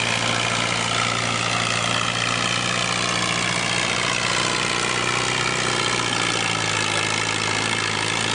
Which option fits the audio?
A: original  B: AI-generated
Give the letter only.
A